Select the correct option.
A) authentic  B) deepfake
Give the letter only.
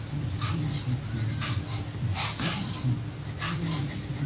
A